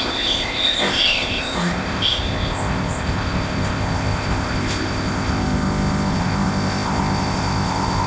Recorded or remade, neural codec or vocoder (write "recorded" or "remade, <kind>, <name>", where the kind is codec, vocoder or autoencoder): remade, codec, ZipCodec